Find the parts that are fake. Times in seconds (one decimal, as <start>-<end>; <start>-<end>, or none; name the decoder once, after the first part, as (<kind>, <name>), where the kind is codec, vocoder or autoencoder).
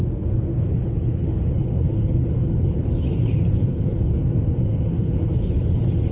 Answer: 0.5-4.2 (codec, HILCodec); 4.7-5.5